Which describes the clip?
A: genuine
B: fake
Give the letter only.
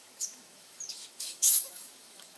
B